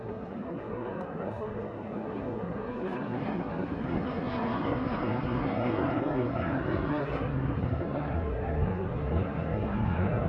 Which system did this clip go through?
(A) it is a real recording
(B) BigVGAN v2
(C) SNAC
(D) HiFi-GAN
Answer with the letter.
C